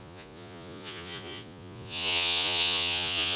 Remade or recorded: remade